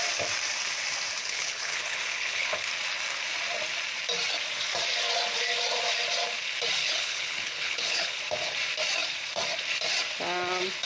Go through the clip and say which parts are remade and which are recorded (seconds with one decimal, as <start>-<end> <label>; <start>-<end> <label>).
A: 0.0-1.2 recorded; 1.2-2.7 remade; 2.7-6.8 recorded; 6.8-8.2 remade; 8.2-10.8 recorded